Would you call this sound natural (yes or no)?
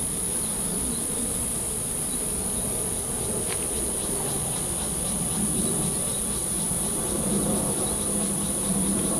no